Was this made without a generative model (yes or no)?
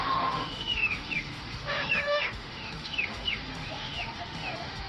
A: no